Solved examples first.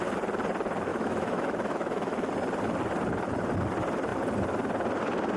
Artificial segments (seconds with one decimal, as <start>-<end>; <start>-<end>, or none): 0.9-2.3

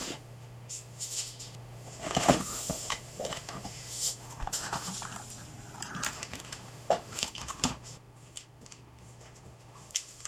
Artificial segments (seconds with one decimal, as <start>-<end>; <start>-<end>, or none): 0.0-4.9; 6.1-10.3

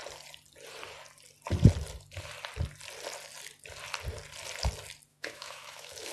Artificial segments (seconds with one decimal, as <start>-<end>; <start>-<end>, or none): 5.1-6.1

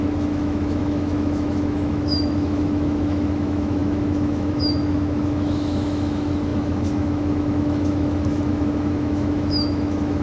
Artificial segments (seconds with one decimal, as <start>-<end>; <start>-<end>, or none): 0.0-10.2

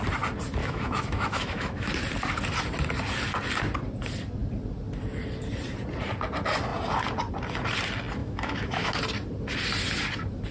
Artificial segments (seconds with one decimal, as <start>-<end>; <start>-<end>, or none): 0.6-1.9; 8.2-8.9

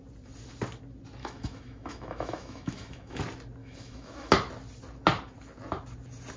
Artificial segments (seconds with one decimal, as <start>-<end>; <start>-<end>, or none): 1.2-3.2; 3.6-4.3

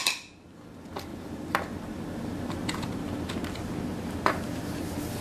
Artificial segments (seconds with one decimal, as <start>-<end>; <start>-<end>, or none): none

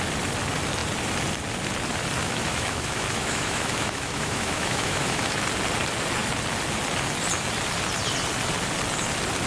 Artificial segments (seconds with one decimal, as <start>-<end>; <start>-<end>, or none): 2.2-5.4